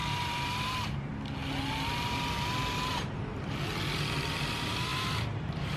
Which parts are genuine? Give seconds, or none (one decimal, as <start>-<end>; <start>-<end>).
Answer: 1.1-2.9; 3.3-4.5